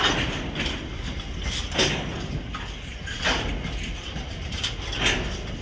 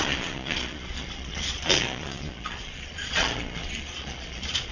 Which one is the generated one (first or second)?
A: second